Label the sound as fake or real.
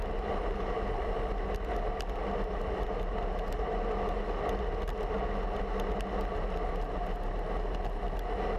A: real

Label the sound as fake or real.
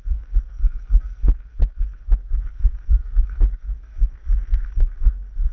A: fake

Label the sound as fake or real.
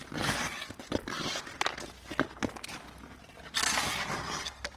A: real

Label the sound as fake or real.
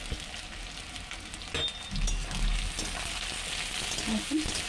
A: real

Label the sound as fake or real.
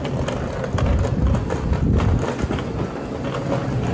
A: real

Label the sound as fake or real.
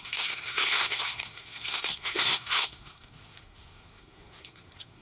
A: fake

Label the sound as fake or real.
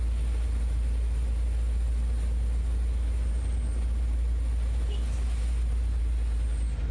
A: real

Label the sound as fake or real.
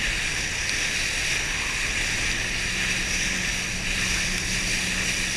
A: real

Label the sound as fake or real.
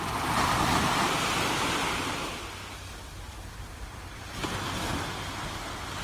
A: real